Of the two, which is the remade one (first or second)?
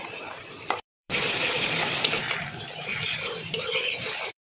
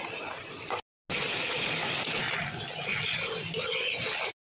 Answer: first